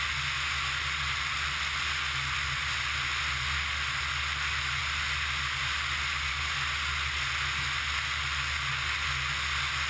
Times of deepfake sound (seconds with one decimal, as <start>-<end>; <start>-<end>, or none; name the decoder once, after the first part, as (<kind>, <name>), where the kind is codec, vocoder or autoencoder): none